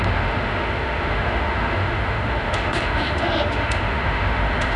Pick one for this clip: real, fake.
fake